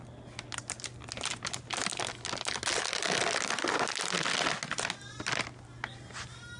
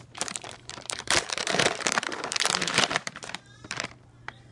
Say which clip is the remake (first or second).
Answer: second